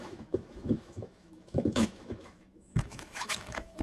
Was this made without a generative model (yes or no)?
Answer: no